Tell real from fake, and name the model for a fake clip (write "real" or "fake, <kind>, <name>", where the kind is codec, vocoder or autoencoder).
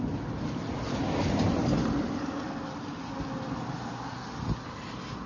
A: real